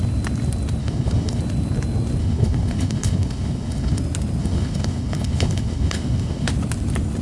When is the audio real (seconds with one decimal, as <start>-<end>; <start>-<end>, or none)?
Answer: 0.0-0.8; 1.4-2.2; 4.0-4.4; 6.5-7.2